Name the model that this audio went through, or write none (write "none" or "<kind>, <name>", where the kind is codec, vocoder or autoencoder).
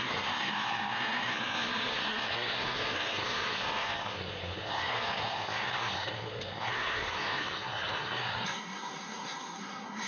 codec, SNAC